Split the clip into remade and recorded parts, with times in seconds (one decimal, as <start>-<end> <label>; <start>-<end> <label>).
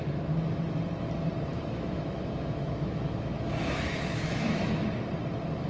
0.0-1.5 recorded; 1.5-4.9 remade; 4.9-5.7 recorded